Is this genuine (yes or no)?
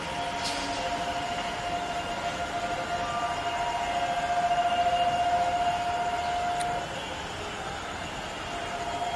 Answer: yes